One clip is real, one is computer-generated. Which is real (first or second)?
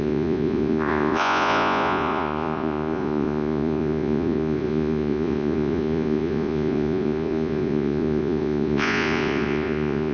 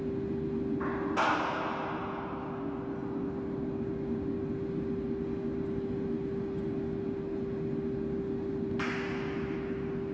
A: second